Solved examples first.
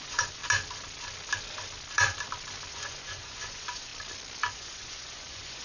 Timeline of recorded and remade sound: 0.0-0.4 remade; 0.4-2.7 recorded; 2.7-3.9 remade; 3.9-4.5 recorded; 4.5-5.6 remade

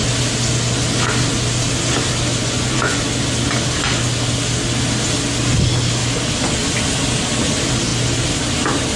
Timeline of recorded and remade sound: 0.0-2.4 recorded; 2.4-3.0 remade; 3.0-9.0 recorded

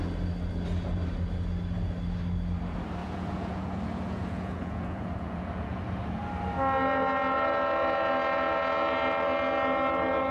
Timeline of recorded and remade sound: 0.0-3.0 recorded; 3.0-6.0 remade; 6.0-10.3 recorded

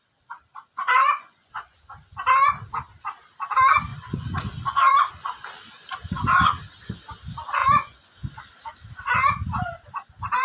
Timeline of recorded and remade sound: 0.0-0.5 recorded; 0.5-2.2 remade; 2.2-3.9 recorded; 3.9-5.1 remade; 5.1-7.6 recorded; 7.6-8.4 remade; 8.4-10.4 recorded

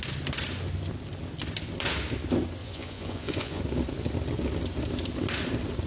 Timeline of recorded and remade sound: 0.0-2.6 recorded; 2.6-3.6 remade; 3.6-5.9 recorded

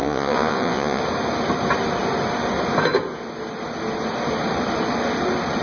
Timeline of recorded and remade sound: 0.0-1.0 remade; 1.0-5.6 recorded

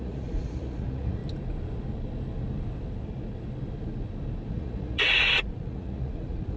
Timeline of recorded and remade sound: 0.0-1.2 remade; 1.2-4.5 recorded; 4.5-6.6 remade